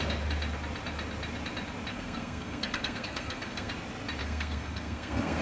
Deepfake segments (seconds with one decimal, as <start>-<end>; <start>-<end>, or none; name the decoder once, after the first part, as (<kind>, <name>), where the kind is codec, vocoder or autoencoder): 1.9-3.7 (codec, SNAC); 4.2-5.4